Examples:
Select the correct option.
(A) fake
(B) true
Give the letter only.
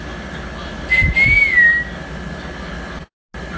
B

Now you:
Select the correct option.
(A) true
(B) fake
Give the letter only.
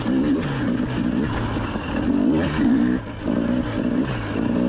A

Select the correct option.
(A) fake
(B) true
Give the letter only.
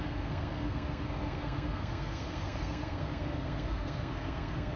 A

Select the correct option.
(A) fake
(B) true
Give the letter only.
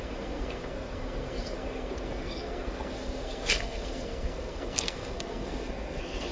A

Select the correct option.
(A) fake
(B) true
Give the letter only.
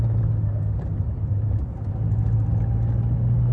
B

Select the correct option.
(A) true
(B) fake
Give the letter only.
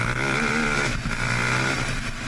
A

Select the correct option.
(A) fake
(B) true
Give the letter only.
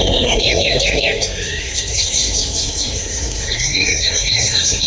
A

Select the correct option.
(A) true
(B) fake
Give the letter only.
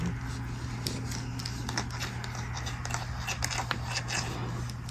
A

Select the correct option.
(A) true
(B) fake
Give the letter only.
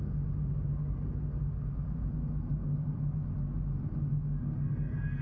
A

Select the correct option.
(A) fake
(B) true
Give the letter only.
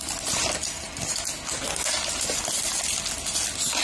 B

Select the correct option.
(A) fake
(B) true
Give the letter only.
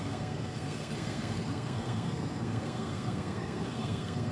A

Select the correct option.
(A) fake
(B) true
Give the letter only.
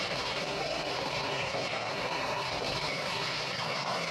A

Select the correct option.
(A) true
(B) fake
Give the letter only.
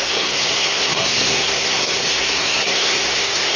B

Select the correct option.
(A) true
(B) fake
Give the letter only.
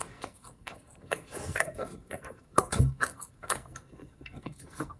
B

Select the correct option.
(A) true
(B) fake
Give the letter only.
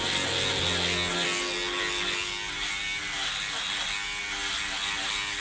A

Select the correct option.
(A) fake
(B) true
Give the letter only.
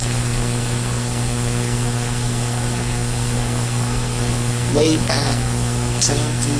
A